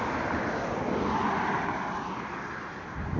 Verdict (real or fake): real